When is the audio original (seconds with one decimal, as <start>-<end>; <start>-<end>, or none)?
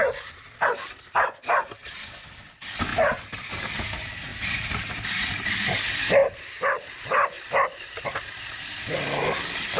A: 0.0-2.9; 3.5-4.3; 4.9-6.2; 6.9-9.8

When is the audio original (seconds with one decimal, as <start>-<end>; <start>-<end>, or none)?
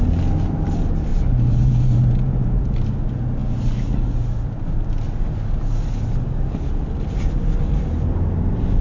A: 0.0-1.1; 2.9-8.8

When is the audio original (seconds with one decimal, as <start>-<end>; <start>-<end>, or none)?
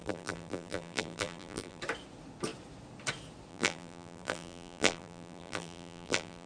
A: 1.8-3.5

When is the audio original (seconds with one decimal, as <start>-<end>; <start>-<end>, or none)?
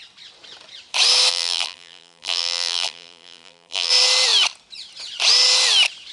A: 0.0-1.3; 3.9-6.1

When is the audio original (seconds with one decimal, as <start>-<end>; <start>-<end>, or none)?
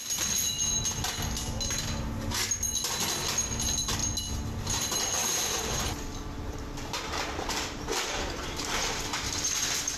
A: 0.0-5.2; 9.0-10.0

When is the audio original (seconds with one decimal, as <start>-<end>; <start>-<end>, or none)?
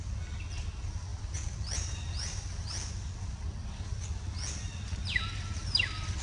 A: 0.0-1.1; 2.9-6.2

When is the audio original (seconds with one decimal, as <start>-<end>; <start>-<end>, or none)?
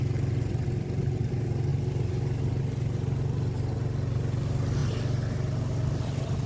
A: 0.0-6.5